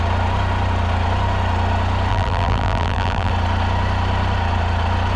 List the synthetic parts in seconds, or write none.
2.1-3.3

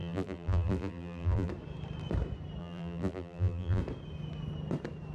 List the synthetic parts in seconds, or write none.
0.0-1.5; 2.6-3.8

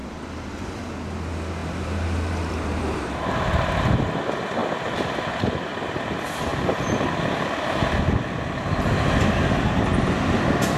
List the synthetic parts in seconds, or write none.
0.0-0.8; 1.6-3.5; 4.6-5.2